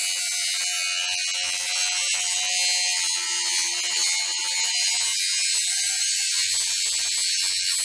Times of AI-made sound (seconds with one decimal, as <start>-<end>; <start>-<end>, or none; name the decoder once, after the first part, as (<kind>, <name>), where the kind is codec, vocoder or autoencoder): none